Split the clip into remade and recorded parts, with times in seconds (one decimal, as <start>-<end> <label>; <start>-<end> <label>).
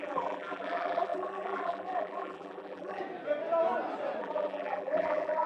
0.0-3.0 remade; 3.0-4.2 recorded; 4.2-5.5 remade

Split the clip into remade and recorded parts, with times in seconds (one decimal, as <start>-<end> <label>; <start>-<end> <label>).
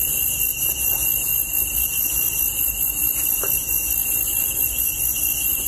0.0-5.7 recorded